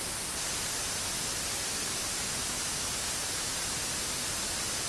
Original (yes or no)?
yes